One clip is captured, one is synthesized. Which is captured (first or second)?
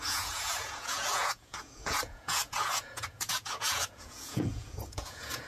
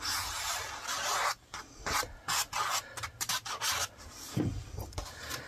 second